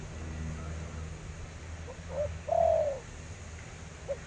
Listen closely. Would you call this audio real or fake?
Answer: real